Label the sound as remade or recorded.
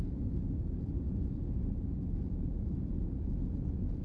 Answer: recorded